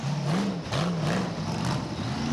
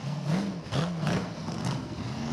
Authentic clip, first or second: first